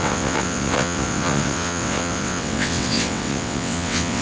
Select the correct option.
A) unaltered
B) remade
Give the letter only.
B